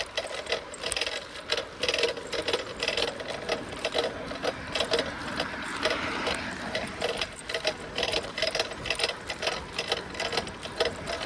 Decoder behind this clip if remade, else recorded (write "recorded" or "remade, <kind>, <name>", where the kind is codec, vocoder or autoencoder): recorded